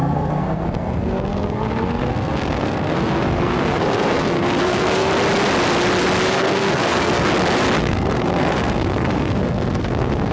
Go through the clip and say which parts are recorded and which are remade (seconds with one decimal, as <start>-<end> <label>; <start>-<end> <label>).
0.0-5.1 remade; 5.1-6.3 recorded; 6.3-7.3 remade; 7.3-7.8 recorded; 7.8-10.3 remade